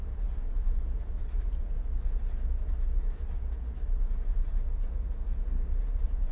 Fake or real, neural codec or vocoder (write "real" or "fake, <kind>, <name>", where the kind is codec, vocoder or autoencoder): real